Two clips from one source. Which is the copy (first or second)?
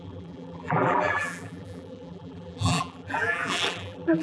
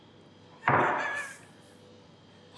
first